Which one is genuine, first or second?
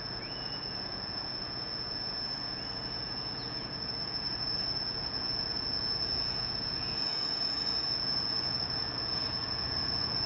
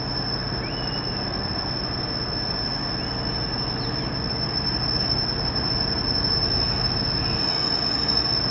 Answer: second